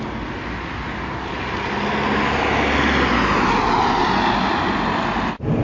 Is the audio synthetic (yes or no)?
no